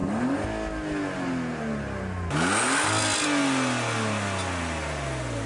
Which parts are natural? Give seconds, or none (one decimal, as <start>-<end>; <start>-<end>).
0.0-5.5